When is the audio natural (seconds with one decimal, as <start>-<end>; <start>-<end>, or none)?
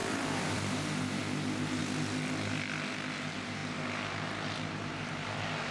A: 0.6-5.7